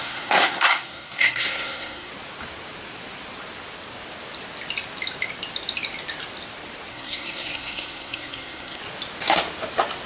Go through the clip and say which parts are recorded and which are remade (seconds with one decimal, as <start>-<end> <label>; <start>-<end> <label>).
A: 0.0-2.1 remade; 2.1-6.9 recorded; 6.9-8.8 remade; 8.8-10.1 recorded